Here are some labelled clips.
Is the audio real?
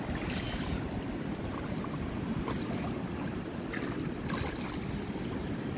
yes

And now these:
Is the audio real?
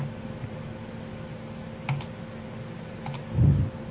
yes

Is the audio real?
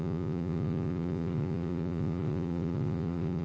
no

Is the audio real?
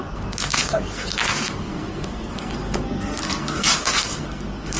no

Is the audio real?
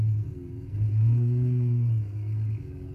no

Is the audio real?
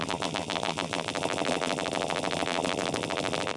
no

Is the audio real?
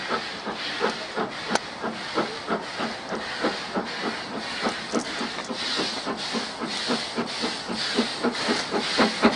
yes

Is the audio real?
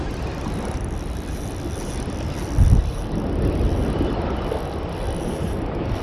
no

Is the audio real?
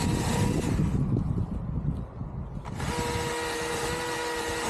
yes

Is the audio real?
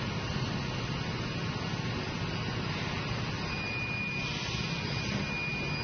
yes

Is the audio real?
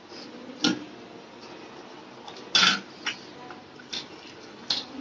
yes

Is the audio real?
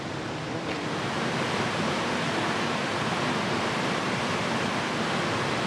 yes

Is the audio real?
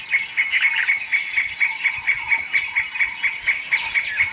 yes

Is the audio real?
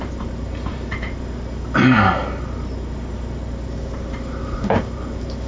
no